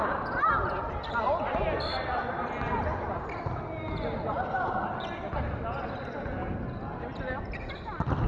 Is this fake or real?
real